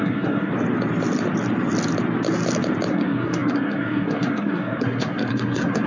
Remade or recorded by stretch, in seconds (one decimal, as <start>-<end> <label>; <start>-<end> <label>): 0.0-0.5 remade; 0.5-2.9 recorded; 2.9-5.9 remade